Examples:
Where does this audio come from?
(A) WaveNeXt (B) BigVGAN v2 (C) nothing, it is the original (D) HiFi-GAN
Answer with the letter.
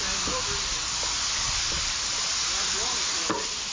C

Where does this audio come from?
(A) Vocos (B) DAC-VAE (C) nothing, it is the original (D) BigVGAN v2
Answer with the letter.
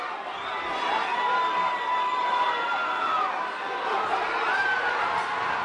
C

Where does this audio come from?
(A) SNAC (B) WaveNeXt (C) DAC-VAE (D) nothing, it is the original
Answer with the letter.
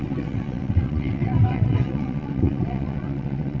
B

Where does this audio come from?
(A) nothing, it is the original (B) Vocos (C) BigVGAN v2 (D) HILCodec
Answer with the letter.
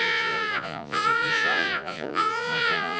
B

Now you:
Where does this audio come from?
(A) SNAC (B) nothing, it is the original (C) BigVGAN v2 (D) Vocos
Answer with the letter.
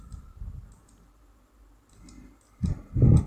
B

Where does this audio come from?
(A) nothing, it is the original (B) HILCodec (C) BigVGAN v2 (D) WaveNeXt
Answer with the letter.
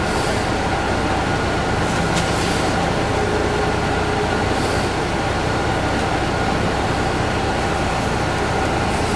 A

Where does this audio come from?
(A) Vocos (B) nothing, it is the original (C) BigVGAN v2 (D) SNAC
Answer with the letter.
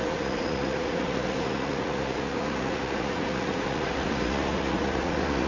A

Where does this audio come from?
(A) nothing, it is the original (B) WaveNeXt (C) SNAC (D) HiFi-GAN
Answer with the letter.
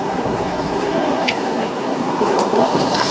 C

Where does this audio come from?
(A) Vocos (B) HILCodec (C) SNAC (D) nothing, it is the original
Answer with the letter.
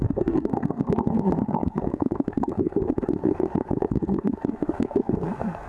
C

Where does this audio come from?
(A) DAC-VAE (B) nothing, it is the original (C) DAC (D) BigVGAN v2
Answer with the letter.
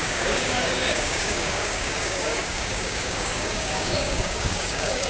C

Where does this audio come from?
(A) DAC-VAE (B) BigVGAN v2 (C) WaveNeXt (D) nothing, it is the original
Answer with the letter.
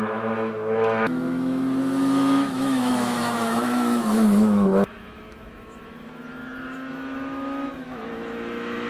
A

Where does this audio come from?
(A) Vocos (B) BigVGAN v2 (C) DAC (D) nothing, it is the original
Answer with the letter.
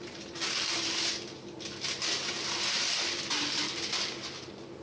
D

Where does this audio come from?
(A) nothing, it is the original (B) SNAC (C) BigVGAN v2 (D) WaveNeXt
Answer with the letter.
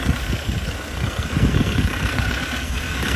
B